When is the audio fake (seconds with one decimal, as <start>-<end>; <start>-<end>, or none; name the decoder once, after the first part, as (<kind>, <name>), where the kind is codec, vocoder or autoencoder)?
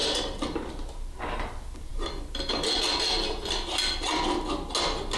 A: none